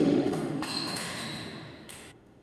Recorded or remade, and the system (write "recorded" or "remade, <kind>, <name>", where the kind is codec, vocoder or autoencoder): remade, autoencoder, DAC-VAE